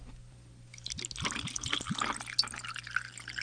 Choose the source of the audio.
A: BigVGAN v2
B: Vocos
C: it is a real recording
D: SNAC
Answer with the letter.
C